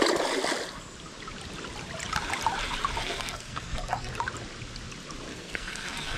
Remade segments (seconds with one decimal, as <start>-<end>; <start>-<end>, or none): 3.0-4.1; 5.3-6.2